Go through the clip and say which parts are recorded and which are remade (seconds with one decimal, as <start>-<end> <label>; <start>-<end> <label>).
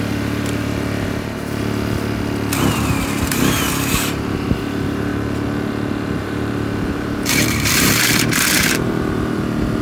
0.0-1.6 remade; 1.6-2.7 recorded; 2.7-5.1 remade; 5.1-6.2 recorded; 6.2-9.8 remade